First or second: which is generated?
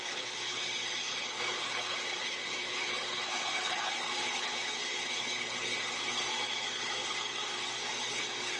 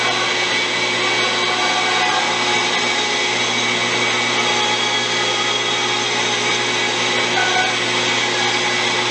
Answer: first